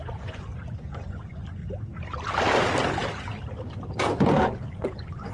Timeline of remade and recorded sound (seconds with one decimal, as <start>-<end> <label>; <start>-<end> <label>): 0.0-0.5 remade; 0.5-1.0 recorded; 1.0-1.6 remade; 1.6-4.7 recorded; 4.7-5.3 remade